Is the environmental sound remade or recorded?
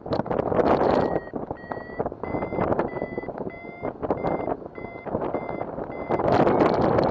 recorded